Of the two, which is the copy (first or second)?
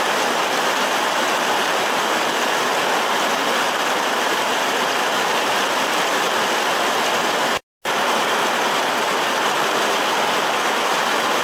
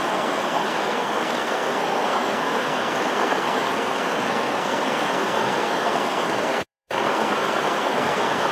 second